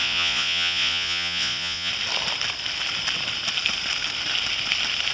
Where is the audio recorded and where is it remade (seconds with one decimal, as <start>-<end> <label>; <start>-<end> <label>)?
0.0-1.9 remade; 1.9-5.1 recorded